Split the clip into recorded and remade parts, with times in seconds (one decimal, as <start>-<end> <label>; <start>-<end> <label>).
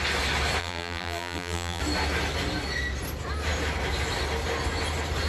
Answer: 0.0-0.6 recorded; 0.6-1.8 remade; 1.8-5.3 recorded